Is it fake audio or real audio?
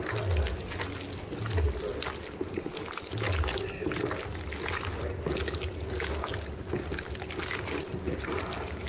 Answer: real